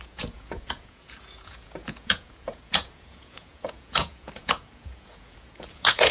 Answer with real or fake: fake